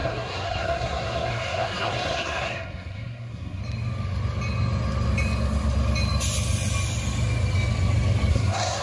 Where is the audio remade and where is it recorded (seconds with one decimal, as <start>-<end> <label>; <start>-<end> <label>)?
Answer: 0.0-3.6 remade; 3.6-8.3 recorded; 8.3-8.8 remade